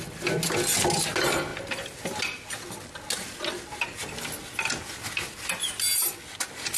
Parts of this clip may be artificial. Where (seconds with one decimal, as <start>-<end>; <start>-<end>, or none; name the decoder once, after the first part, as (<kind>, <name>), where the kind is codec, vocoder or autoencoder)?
none